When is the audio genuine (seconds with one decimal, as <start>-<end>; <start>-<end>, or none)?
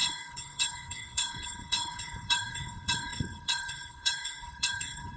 none